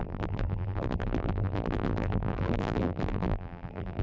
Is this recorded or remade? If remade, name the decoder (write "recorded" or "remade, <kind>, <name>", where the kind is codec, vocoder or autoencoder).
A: remade, vocoder, BigVGAN v2